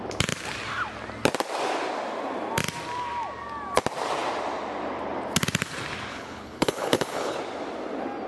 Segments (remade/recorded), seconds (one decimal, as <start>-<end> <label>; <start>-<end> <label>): 0.0-6.1 recorded; 6.1-7.4 remade; 7.4-8.3 recorded